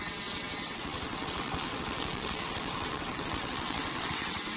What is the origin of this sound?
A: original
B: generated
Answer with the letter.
B